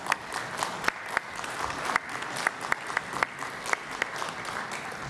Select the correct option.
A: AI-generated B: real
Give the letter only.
B